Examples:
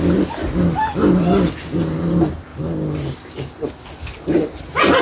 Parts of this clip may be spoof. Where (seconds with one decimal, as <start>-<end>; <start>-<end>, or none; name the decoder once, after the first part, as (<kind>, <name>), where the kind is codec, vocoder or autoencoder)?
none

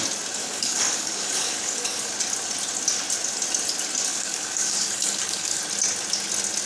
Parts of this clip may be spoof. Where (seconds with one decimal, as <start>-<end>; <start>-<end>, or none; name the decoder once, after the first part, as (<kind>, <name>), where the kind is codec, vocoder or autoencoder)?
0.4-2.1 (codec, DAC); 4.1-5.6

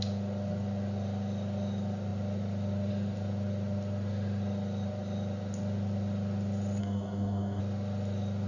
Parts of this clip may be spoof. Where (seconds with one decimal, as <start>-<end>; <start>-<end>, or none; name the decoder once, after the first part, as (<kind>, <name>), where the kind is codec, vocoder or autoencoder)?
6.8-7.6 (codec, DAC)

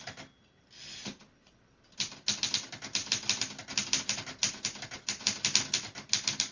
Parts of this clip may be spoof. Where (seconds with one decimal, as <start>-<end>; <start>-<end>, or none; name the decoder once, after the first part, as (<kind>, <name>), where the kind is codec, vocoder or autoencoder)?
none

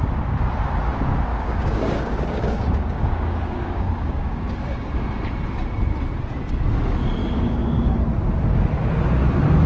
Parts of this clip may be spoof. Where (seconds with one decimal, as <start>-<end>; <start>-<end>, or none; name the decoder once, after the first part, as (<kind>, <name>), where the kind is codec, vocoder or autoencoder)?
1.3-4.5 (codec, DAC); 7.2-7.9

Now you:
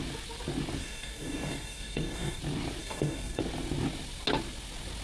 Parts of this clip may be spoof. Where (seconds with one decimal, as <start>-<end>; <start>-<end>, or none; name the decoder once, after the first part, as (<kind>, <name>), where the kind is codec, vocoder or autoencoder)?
0.8-2.4 (codec, DAC); 2.8-3.4

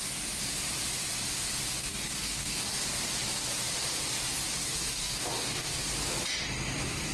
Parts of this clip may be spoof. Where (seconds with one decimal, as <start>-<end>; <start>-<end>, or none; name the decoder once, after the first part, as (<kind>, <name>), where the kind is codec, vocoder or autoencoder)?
1.8-2.8 (codec, DAC); 4.6-5.7